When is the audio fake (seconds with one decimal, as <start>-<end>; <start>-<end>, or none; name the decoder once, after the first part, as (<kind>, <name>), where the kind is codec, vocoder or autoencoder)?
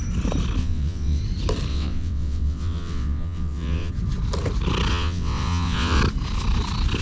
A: 0.6-1.2 (vocoder, WaveNeXt); 1.7-3.9; 4.9-6.0